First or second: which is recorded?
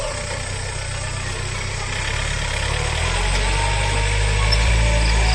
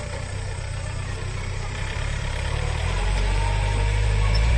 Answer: first